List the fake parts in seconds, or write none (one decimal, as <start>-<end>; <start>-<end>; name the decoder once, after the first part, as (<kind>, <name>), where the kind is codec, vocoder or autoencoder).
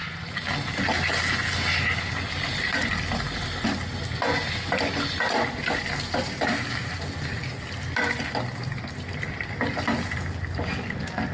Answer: none